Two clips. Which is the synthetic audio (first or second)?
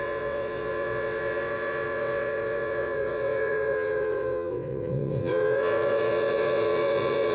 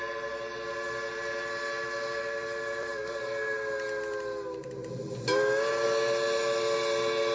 first